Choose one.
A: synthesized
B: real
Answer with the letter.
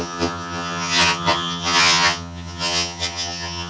A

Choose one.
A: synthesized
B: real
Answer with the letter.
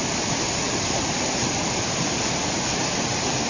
B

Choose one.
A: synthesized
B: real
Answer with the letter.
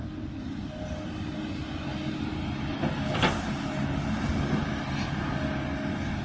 B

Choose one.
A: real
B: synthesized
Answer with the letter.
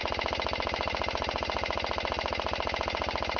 A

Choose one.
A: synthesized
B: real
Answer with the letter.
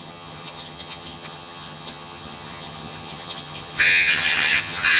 A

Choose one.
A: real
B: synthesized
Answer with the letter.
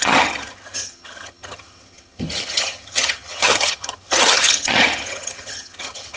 B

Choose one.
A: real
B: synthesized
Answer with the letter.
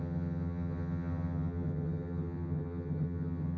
B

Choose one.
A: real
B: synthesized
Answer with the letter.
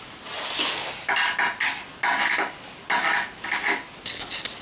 A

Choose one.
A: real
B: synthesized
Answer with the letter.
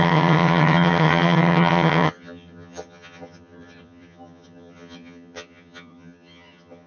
B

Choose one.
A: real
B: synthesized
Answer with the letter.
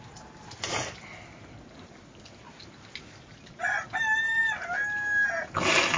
A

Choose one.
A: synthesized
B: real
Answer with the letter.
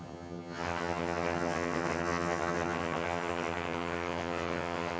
A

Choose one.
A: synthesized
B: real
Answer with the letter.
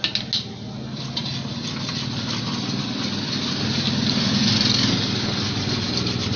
B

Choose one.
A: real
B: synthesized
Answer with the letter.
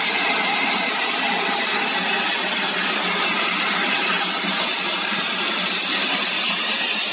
A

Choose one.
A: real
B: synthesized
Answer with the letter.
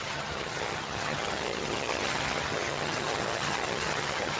B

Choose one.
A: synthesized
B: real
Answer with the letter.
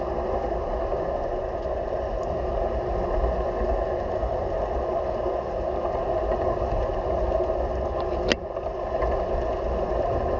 B